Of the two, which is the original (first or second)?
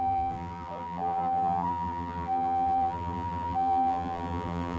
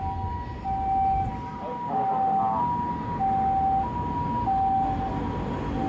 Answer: second